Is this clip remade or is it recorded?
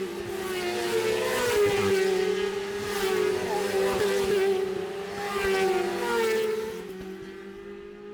recorded